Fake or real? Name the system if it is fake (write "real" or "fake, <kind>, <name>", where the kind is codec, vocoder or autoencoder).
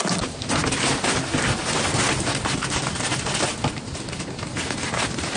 real